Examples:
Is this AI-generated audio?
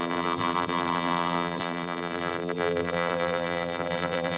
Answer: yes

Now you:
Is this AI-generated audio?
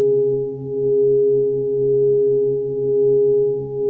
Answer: no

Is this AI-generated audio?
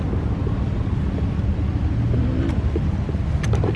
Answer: no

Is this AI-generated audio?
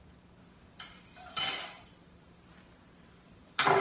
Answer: yes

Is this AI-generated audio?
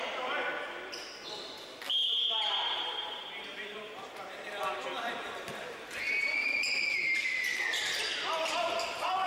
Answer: yes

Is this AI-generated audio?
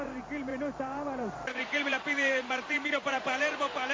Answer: yes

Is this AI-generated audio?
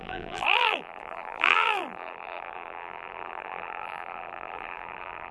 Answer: yes